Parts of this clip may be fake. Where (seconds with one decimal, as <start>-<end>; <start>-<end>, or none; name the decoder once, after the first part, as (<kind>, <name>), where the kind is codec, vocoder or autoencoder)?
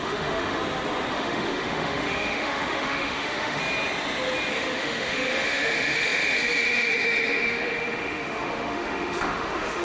0.0-0.6 (autoencoder, DAC-VAE); 1.1-3.6; 4.5-9.8